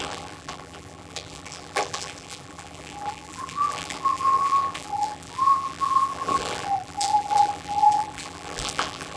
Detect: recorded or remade remade